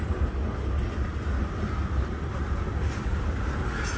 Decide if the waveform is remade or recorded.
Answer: recorded